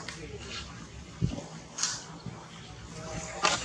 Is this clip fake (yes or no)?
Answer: no